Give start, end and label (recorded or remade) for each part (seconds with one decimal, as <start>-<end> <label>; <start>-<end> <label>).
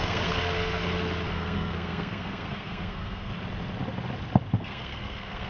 0.0-0.8 remade; 0.8-1.3 recorded; 1.3-3.3 remade; 3.3-4.6 recorded; 4.6-5.5 remade